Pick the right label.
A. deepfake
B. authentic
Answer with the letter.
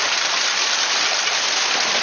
A